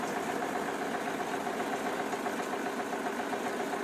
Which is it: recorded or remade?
recorded